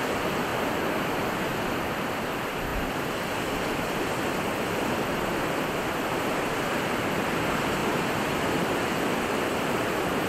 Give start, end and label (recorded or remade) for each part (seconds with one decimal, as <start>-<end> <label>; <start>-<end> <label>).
0.0-0.5 remade; 0.5-1.6 recorded; 1.6-10.3 remade